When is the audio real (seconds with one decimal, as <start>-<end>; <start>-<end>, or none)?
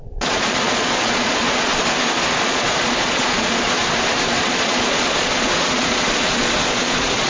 1.7-2.4; 3.8-4.4